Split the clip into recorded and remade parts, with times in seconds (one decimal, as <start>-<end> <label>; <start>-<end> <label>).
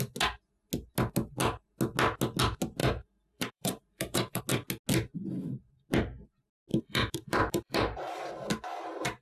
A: 0.0-2.8 recorded; 2.8-4.4 remade; 4.4-6.7 recorded; 6.7-8.3 remade; 8.3-9.2 recorded